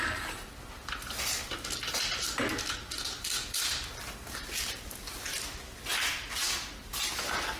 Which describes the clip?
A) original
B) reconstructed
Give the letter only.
A